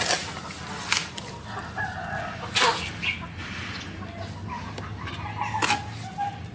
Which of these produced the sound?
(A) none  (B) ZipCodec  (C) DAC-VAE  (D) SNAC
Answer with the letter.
A